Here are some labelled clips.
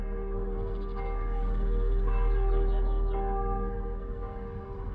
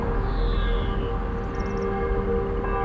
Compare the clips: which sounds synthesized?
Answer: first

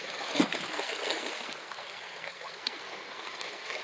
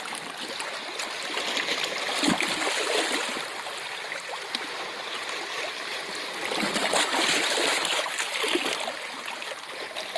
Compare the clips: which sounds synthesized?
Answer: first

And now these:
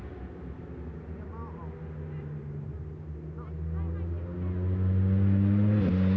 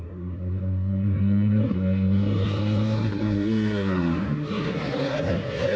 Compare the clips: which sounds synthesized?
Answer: second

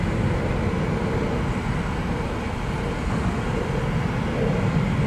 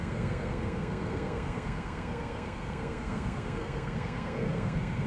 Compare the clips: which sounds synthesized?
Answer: second